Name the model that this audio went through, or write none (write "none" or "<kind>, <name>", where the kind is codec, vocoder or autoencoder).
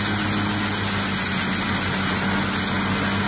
none